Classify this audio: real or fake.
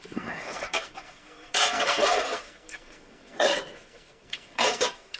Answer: fake